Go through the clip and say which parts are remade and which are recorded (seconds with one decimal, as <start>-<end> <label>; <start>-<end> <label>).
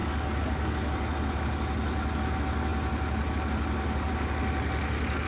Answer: 0.0-0.9 remade; 0.9-5.3 recorded